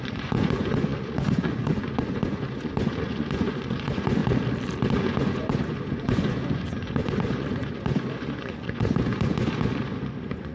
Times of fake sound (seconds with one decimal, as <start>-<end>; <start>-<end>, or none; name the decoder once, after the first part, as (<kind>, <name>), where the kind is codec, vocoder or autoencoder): 0.0-4.2 (vocoder, Vocos); 5.0-10.5